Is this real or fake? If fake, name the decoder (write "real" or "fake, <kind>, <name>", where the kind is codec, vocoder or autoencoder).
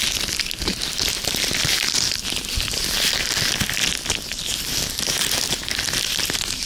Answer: fake, vocoder, BigVGAN v2